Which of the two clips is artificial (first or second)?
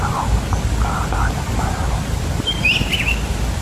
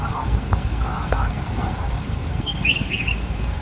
second